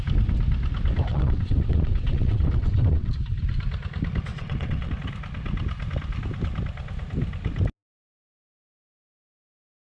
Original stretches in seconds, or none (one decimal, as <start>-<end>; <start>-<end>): 0.0-1.1; 3.1-4.3; 4.9-9.8